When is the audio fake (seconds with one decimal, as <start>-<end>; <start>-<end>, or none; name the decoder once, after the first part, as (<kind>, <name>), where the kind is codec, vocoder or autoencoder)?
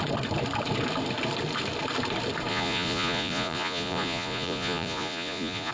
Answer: 2.5-5.7 (vocoder, Vocos)